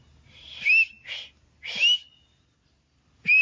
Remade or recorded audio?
recorded